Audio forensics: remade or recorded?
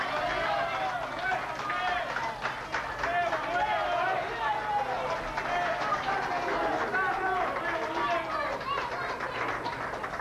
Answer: recorded